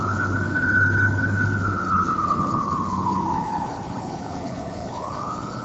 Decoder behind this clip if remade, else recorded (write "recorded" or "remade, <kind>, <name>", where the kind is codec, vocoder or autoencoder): remade, codec, HILCodec